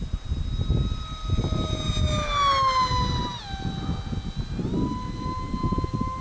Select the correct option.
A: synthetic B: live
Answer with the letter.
B